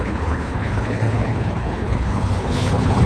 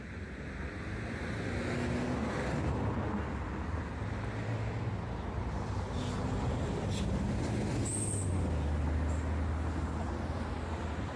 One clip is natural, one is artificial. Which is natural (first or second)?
second